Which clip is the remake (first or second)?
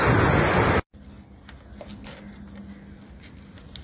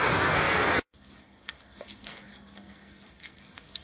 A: second